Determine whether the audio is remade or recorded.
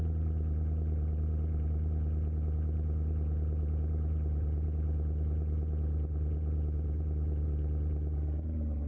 remade